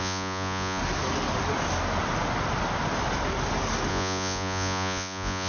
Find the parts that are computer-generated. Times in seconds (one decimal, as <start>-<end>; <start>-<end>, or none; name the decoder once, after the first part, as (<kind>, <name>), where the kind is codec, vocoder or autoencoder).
0.0-0.8 (vocoder, Vocos); 3.9-5.5